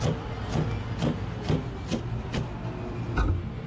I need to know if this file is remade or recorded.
recorded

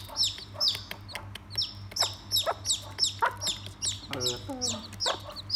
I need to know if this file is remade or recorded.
recorded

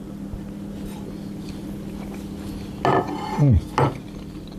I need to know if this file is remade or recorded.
recorded